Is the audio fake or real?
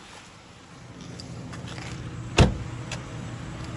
real